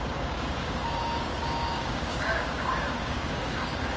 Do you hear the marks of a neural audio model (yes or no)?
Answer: yes